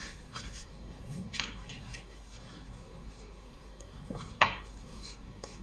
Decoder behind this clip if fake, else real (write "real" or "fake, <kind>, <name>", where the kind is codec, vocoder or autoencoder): fake, codec, SNAC